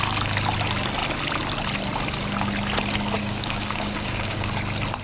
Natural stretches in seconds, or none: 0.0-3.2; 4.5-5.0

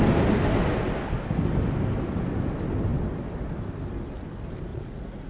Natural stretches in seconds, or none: 0.0-4.7

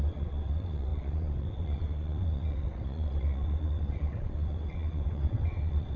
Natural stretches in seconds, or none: none

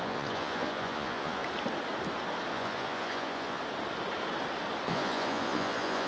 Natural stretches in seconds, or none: 1.4-2.5; 3.6-4.9

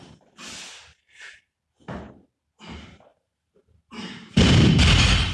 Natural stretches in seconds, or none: 0.0-3.1; 4.7-5.3